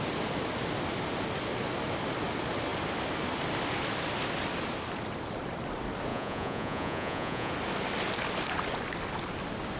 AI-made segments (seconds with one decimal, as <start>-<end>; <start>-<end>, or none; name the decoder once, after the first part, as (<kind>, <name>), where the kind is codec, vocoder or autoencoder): 6.1-7.5 (vocoder, Vocos)